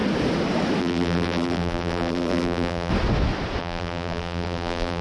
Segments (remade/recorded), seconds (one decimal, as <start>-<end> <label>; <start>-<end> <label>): 0.0-0.8 recorded; 0.8-2.9 remade; 2.9-3.6 recorded; 3.6-5.0 remade